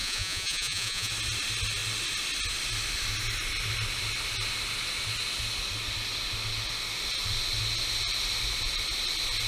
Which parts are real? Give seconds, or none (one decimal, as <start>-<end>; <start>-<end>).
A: 1.1-9.5